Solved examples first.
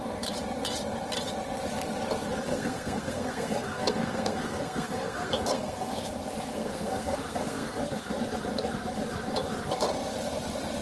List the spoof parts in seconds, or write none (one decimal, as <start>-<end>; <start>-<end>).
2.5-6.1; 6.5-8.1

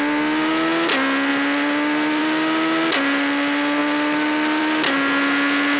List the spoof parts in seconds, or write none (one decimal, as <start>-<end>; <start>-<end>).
none

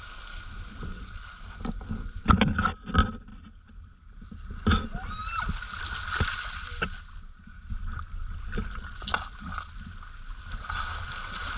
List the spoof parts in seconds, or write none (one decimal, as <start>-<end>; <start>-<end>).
none

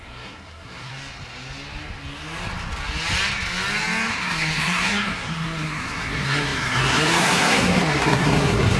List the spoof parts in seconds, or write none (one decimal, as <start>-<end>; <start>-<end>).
0.0-0.9; 4.1-8.8

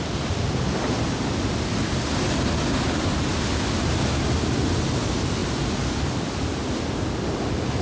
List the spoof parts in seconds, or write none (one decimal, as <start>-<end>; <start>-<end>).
none

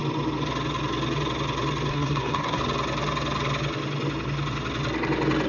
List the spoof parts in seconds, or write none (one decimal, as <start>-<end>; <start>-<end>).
1.9-2.6

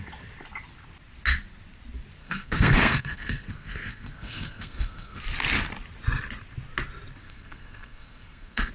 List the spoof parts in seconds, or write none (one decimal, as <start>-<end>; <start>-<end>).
2.2-5.2; 7.2-8.7

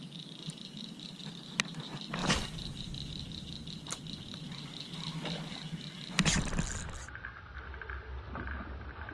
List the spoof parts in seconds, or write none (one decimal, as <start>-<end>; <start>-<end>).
none